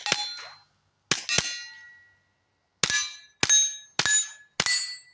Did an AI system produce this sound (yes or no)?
no